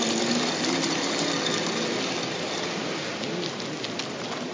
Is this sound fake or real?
real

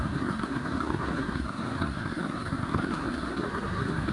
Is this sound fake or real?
fake